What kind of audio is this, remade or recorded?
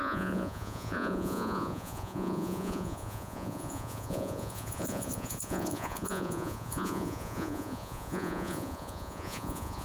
remade